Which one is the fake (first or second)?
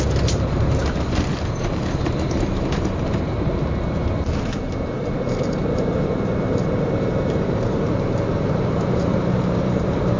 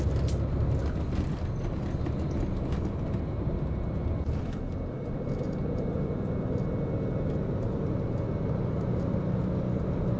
first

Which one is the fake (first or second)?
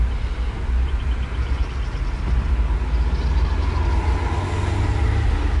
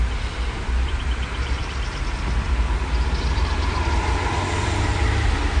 second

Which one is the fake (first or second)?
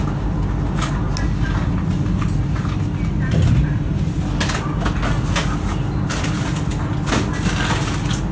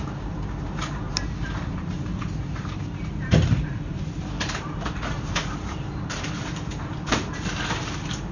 second